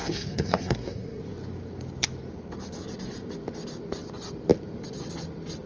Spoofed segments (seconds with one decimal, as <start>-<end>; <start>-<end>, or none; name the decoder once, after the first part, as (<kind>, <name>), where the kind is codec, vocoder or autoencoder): 0.0-1.2 (codec, SNAC)